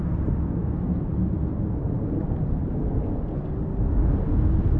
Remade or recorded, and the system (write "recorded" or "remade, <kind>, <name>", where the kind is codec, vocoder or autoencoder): recorded